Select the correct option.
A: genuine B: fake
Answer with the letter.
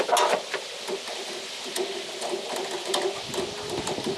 A